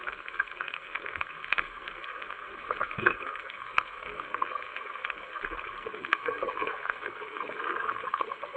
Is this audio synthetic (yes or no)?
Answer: yes